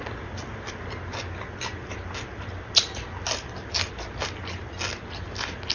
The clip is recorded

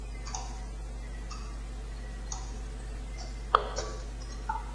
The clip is recorded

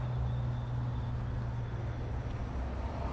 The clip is recorded